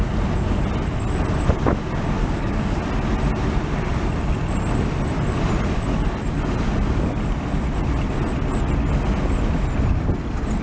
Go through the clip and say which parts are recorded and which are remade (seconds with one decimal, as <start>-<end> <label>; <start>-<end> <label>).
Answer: 0.0-2.2 recorded; 2.2-2.8 remade; 2.8-10.6 recorded